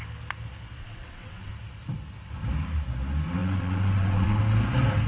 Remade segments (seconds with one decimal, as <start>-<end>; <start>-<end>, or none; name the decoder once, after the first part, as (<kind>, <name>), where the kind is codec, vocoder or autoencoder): 0.8-1.5 (vocoder, WaveNeXt); 3.4-4.4